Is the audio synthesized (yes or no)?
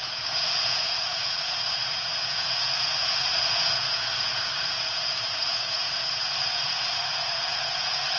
yes